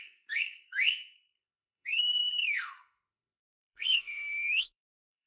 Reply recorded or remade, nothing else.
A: remade